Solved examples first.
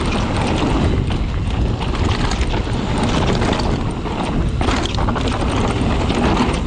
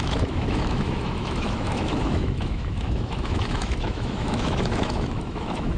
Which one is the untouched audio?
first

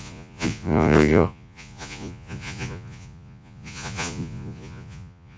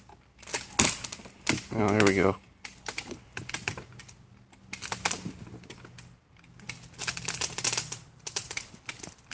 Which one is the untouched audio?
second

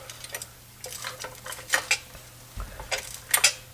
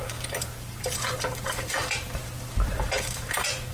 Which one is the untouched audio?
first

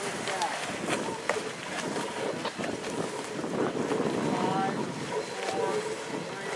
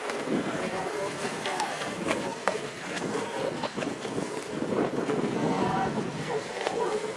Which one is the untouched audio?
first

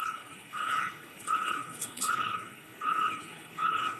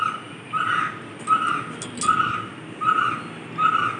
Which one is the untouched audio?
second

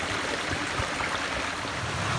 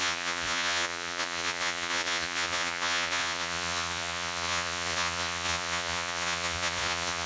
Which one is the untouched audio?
first